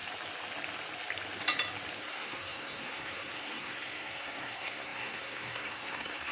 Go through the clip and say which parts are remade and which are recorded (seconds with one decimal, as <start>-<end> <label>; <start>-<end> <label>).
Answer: 0.0-2.0 recorded; 2.0-6.3 remade